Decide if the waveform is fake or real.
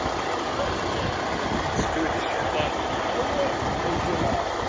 real